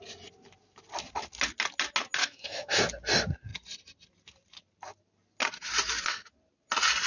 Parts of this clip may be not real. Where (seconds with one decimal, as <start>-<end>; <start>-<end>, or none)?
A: 2.2-2.8

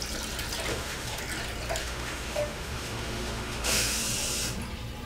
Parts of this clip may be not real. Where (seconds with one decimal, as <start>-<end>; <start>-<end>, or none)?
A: 0.7-1.2; 1.8-4.0

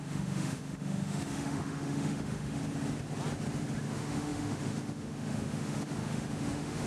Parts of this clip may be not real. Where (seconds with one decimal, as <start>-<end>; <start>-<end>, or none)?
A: 0.0-2.6; 3.8-6.9

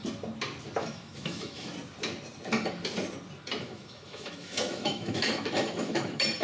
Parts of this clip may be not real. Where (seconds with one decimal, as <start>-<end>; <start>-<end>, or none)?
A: 0.8-1.7; 3.6-6.4

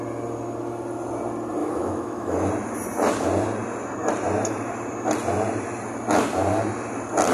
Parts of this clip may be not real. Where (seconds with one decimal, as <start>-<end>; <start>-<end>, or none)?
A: 1.6-2.5

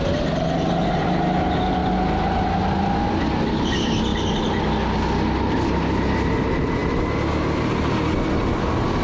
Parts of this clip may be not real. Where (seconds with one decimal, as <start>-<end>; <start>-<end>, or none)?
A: none

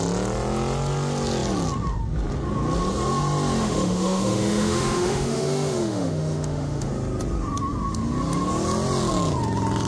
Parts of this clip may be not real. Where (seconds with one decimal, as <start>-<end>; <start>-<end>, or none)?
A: 3.6-6.9